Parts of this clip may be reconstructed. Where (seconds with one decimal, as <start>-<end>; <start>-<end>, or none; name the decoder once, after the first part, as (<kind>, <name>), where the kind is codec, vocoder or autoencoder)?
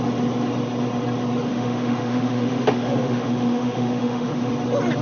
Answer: 1.5-4.5 (autoencoder, DAC-VAE)